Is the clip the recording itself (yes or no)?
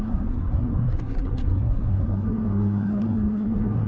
no